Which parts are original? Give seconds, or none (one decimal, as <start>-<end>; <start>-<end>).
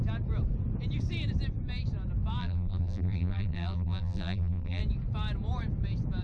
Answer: 0.0-2.4; 4.8-6.2